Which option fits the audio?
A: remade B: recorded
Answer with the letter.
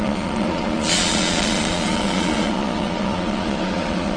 A